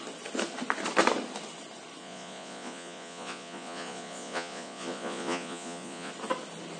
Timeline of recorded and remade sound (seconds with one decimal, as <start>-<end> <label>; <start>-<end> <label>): 0.0-2.0 recorded; 2.0-6.1 remade; 6.1-6.8 recorded